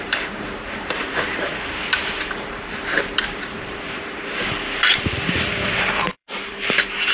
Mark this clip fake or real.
fake